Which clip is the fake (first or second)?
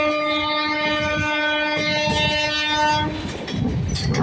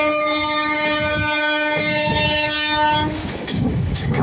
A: second